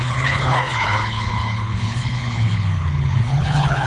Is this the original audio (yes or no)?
no